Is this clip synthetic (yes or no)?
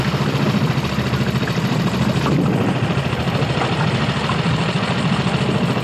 no